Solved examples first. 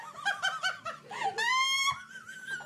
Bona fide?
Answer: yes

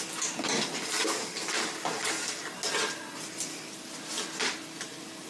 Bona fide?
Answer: yes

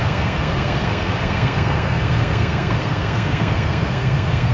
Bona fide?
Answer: no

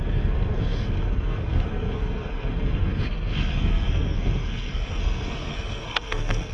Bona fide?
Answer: no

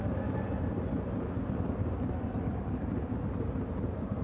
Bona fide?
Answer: yes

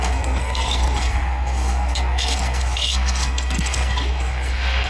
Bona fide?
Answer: no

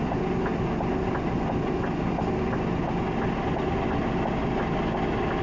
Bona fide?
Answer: yes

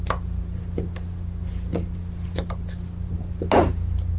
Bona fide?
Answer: yes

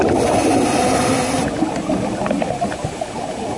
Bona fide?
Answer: yes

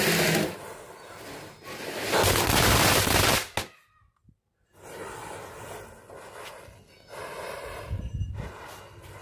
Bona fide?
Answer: yes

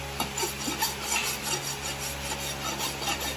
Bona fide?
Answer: yes